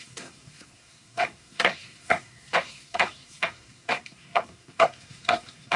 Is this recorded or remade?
remade